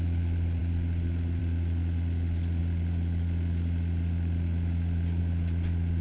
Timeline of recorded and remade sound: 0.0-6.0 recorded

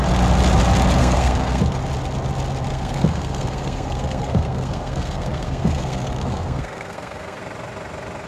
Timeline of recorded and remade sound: 0.0-1.0 recorded; 1.0-1.6 remade; 1.6-2.7 recorded; 2.7-7.4 remade; 7.4-8.3 recorded